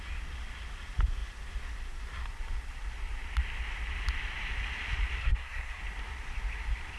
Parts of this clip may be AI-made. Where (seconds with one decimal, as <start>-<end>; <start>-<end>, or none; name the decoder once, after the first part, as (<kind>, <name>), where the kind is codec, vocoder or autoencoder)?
5.2-5.8 (codec, SNAC)